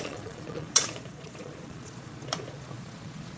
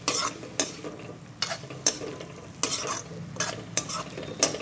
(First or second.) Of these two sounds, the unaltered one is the second